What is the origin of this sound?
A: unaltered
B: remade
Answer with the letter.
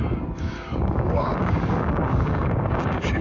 B